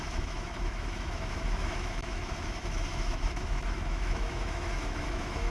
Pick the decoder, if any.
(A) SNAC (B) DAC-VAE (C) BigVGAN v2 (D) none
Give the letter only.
B